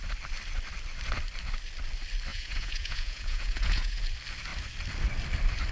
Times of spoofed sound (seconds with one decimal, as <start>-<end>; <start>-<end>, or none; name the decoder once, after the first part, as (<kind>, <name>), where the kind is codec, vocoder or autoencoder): 2.3-4.0 (vocoder, Vocos)